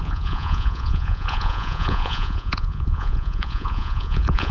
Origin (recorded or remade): remade